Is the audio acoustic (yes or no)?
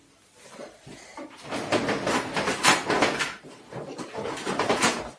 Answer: no